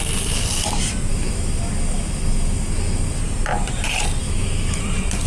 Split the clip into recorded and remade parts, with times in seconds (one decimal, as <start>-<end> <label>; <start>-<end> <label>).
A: 0.0-1.1 recorded; 1.1-3.2 remade; 3.2-4.2 recorded; 4.2-4.8 remade; 4.8-5.3 recorded